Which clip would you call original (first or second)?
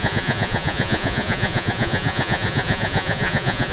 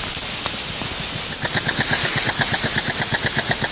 second